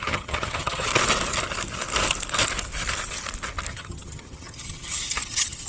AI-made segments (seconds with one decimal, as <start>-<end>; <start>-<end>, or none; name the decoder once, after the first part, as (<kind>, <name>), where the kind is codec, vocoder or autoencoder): 0.0-0.9 (vocoder, HiFi-GAN); 3.7-5.7